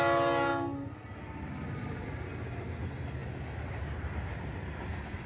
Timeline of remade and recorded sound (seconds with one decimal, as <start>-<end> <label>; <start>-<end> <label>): 0.0-5.3 recorded